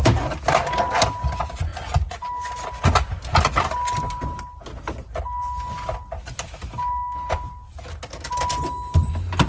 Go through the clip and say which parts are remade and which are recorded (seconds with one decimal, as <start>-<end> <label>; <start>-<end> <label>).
0.0-9.5 recorded